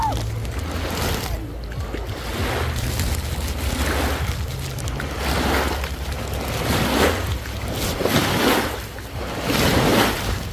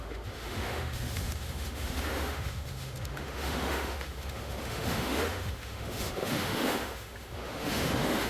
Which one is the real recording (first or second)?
first